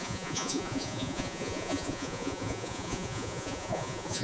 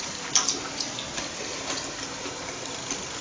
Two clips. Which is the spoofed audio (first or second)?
first